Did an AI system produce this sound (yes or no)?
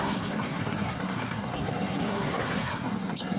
yes